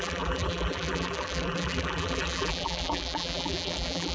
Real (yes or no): no